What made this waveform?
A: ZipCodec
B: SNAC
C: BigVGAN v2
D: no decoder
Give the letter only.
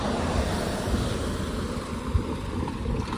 D